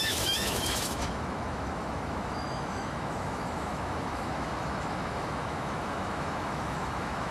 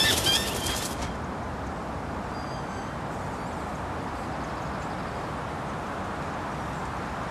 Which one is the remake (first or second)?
first